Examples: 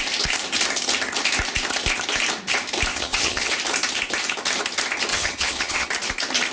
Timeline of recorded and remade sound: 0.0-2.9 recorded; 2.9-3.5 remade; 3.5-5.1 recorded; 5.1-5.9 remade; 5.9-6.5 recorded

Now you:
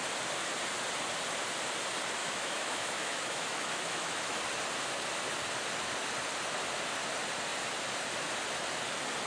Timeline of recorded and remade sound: 0.0-2.2 recorded; 2.2-4.4 remade; 4.4-9.3 recorded